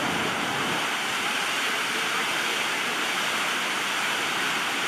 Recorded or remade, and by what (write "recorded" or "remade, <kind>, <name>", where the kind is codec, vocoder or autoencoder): recorded